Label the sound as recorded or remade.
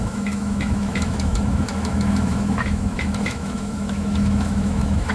remade